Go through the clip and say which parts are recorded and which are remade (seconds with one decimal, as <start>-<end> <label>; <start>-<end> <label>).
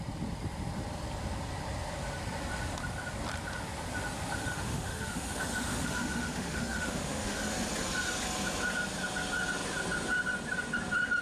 0.0-4.4 recorded; 4.4-7.4 remade; 7.4-11.2 recorded